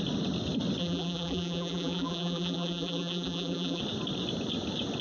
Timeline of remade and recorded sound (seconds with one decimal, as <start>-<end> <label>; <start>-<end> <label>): 0.0-0.8 recorded; 0.8-3.8 remade; 3.8-5.0 recorded